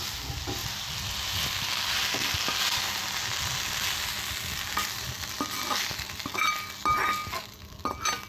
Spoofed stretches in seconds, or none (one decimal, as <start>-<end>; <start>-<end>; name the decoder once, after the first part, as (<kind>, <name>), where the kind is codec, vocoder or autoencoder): none